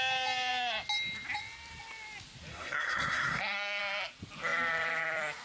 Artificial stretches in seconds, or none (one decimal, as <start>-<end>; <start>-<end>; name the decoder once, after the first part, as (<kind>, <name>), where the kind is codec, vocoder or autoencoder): 2.5-3.8 (codec, SNAC)